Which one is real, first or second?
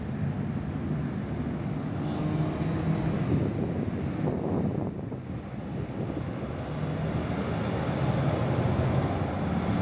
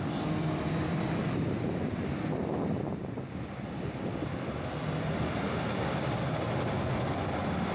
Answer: first